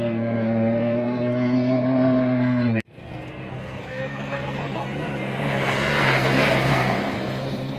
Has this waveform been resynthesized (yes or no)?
yes